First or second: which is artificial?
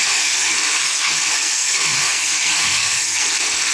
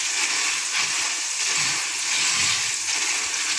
first